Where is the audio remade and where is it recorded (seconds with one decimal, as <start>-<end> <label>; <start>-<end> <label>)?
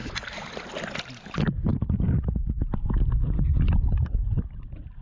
0.0-5.0 recorded